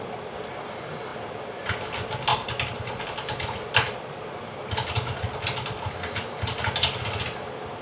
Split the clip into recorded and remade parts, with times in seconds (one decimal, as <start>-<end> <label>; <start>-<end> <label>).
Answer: 0.0-7.8 recorded